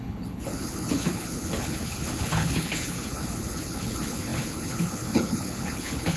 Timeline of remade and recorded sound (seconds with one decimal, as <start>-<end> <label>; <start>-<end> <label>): 0.0-6.2 remade